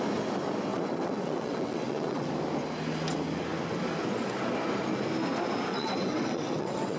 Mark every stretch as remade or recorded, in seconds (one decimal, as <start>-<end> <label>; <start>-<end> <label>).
0.0-0.7 recorded; 0.7-2.3 remade; 2.3-5.7 recorded; 5.7-7.0 remade